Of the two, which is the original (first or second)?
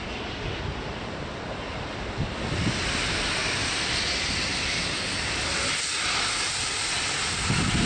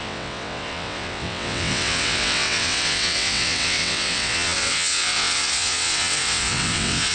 first